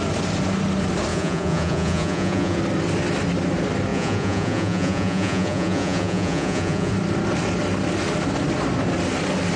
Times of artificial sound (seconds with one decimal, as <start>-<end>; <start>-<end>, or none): 1.1-2.6; 3.9-6.9

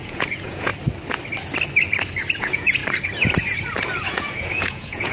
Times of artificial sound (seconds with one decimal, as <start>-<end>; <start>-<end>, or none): 0.0-0.7; 2.4-2.8; 4.1-5.1

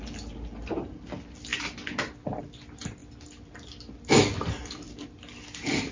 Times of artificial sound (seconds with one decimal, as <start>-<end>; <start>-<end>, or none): none

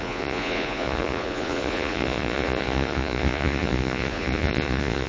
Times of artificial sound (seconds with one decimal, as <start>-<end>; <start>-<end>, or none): 0.0-5.1

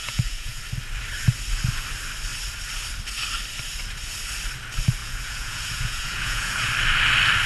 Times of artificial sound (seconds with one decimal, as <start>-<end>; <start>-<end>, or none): 0.0-0.6; 5.0-6.7

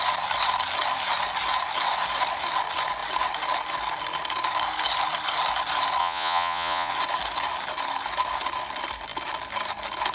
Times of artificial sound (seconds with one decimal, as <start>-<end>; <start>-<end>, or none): 6.0-6.9

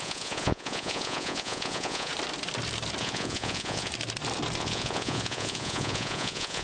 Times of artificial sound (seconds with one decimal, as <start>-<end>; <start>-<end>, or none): 0.0-2.1; 3.0-3.9; 4.6-6.6

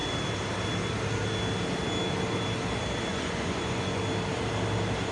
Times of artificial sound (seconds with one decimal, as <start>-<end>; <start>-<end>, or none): 3.1-4.0